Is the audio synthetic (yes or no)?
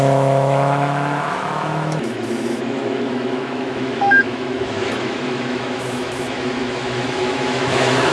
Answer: yes